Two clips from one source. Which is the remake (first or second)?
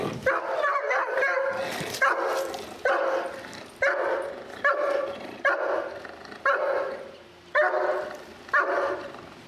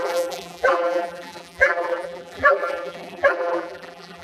second